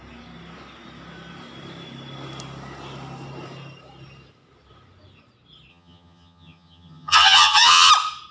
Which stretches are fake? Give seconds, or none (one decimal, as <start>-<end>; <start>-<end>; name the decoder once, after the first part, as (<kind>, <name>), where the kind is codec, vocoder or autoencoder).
5.7-7.9 (vocoder, HiFi-GAN)